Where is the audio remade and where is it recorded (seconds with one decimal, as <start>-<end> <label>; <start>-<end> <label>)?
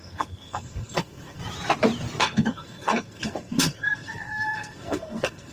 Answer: 0.0-1.4 remade; 1.4-2.2 recorded; 2.2-5.5 remade